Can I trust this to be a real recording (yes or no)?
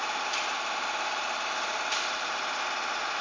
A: yes